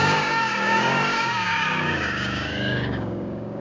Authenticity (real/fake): fake